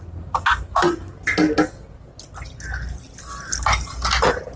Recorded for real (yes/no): yes